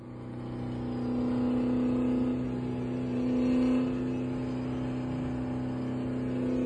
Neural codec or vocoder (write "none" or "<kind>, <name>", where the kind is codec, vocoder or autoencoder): none